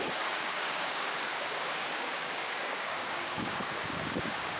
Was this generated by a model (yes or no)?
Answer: yes